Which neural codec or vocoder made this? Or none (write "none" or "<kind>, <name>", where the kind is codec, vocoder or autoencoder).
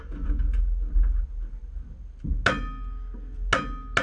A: none